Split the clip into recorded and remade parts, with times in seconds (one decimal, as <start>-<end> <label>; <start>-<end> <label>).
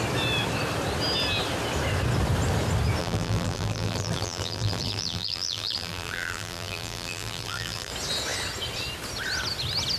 0.0-3.0 recorded; 3.0-7.9 remade; 7.9-10.0 recorded